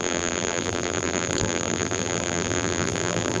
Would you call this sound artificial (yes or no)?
yes